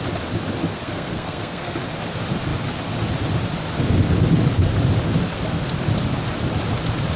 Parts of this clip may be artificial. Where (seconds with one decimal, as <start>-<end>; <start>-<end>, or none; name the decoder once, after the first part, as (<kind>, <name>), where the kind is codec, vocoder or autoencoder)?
0.7-1.8 (codec, SNAC)